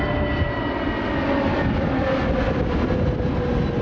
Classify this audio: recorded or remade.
recorded